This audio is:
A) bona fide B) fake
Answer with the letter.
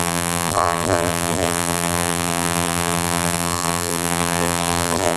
B